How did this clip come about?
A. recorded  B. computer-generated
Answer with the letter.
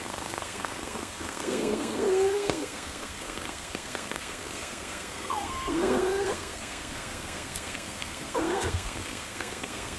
B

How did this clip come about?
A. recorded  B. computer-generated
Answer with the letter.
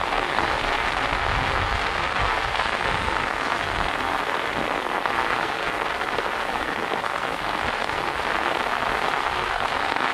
B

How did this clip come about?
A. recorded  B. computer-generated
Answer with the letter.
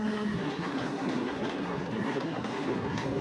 B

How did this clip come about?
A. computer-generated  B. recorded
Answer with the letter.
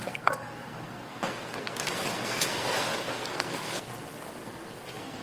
A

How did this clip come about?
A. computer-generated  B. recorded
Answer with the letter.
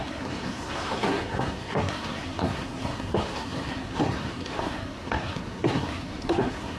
A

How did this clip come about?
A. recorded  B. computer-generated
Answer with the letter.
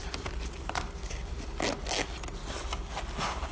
A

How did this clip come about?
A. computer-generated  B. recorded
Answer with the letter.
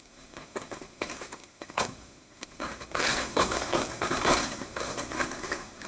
A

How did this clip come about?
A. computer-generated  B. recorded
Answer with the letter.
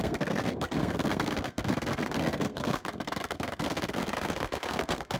A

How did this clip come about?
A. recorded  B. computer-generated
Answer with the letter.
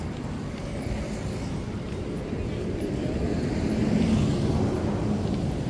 A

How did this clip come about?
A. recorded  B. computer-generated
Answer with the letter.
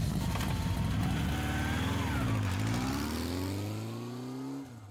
A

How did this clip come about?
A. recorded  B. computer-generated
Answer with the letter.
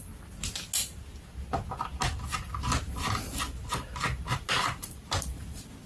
A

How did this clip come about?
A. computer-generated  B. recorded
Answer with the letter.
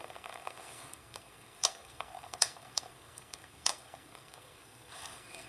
A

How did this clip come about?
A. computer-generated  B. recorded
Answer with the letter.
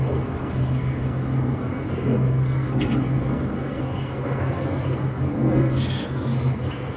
A